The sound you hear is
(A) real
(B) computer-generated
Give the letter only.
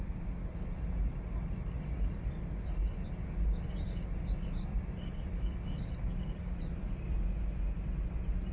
A